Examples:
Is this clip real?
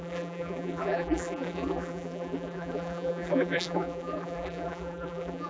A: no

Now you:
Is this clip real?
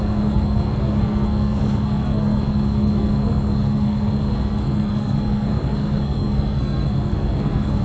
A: no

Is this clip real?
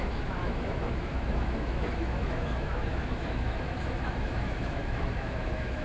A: no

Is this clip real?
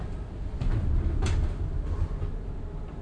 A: yes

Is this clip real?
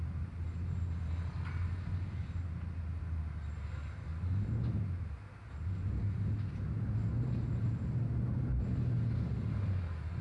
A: yes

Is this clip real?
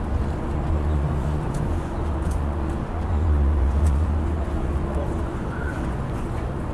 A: no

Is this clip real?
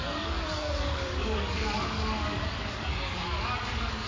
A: no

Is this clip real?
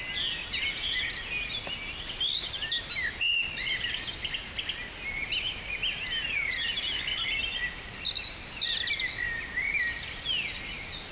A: yes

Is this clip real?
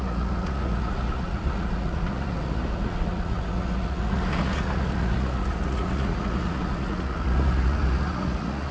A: no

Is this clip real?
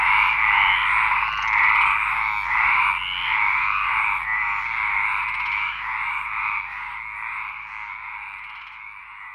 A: yes